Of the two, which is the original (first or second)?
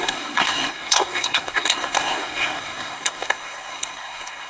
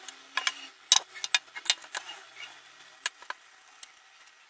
second